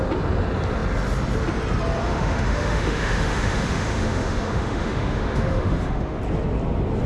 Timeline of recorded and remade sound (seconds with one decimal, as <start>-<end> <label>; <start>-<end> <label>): 0.0-2.0 recorded; 2.0-6.2 remade; 6.2-7.1 recorded